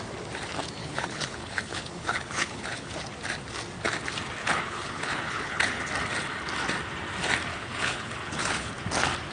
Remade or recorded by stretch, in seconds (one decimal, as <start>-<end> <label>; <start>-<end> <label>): 0.0-0.8 recorded; 0.8-2.9 remade; 2.9-4.4 recorded; 4.4-5.8 remade; 5.8-7.5 recorded; 7.5-8.7 remade; 8.7-9.3 recorded